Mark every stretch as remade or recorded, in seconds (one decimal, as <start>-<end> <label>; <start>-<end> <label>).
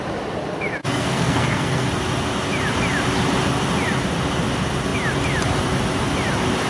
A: 0.0-0.8 recorded; 0.8-1.9 remade; 1.9-6.7 recorded